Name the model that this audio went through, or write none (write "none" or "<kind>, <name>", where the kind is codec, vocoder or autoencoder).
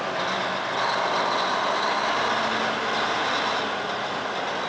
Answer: none